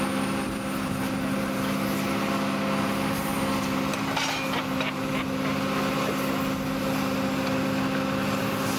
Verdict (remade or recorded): recorded